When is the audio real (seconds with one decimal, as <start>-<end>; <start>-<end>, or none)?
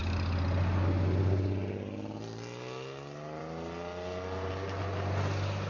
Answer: 0.0-5.7